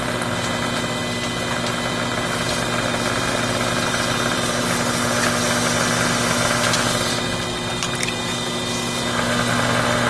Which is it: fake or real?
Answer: real